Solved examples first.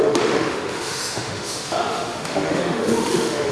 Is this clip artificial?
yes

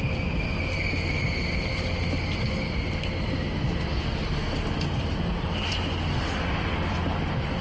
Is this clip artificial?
no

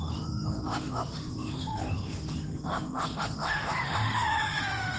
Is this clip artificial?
yes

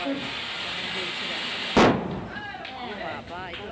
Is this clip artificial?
no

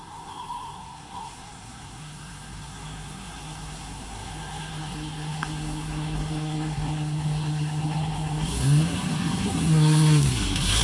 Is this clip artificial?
yes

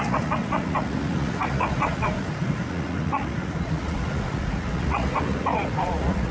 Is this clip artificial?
yes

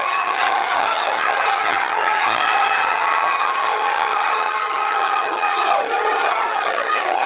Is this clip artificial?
yes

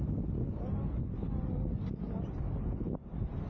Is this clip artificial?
no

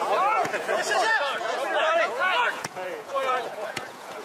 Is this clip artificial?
yes